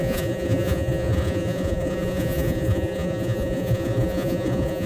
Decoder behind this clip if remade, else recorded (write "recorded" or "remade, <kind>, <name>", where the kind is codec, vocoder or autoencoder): remade, vocoder, Vocos